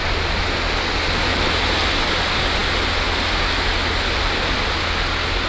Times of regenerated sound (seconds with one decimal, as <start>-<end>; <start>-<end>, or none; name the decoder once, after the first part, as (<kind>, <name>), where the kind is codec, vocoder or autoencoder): none